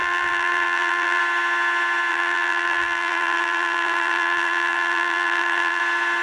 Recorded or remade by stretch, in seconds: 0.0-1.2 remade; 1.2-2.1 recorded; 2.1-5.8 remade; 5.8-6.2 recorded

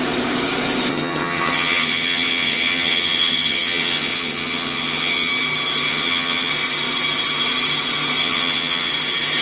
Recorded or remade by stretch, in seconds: 0.0-0.9 recorded; 0.9-5.3 remade; 5.3-5.9 recorded; 5.9-6.5 remade; 6.5-8.2 recorded; 8.2-8.9 remade; 8.9-9.4 recorded

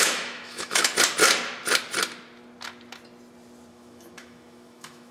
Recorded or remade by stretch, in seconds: 0.0-0.9 remade; 0.9-3.7 recorded; 3.7-5.1 remade

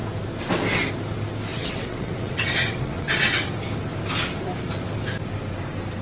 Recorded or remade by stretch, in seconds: 0.0-1.5 recorded; 1.5-3.5 remade; 3.5-6.0 recorded

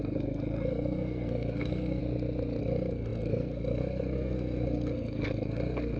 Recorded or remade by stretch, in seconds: 0.0-2.0 remade; 2.0-2.6 recorded; 2.6-6.0 remade

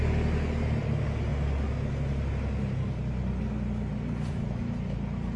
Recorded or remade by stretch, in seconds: 0.0-5.4 recorded